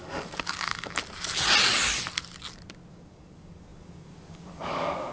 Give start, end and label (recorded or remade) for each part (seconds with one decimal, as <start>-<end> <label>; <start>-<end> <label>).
0.0-1.0 remade; 1.0-2.9 recorded; 2.9-5.1 remade